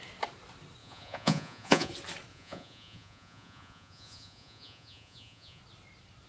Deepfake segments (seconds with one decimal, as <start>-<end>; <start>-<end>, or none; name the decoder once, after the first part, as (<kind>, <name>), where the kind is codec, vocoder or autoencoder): 0.8-1.9 (vocoder, Vocos); 2.3-5.6